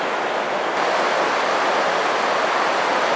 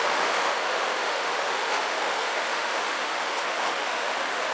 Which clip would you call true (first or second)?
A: first